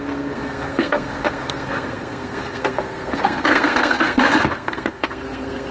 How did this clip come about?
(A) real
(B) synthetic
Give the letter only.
B